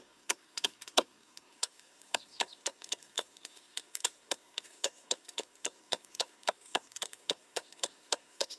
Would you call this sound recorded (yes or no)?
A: no